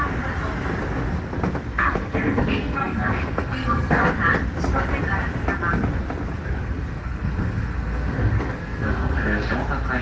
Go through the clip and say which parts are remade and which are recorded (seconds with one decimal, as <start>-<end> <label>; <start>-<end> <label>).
0.0-1.7 recorded; 1.7-4.1 remade; 4.1-6.6 recorded; 6.6-9.5 remade; 9.5-10.0 recorded